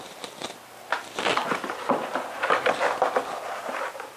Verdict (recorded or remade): recorded